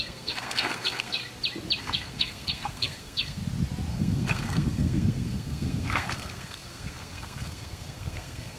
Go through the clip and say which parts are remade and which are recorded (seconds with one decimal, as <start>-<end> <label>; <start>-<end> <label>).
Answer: 0.0-1.2 remade; 1.2-1.8 recorded; 1.8-3.4 remade; 3.4-3.9 recorded; 3.9-8.6 remade